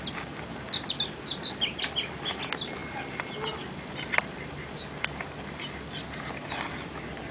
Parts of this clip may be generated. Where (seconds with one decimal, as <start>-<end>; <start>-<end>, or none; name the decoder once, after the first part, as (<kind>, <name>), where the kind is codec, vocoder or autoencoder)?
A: none